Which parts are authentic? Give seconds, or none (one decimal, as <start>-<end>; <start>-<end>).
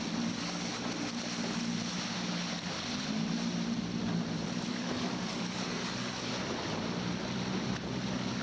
0.0-4.7; 6.3-8.4